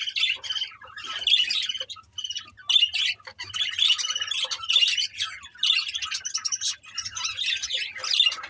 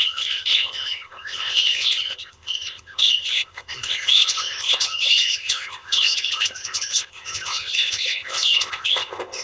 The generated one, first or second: second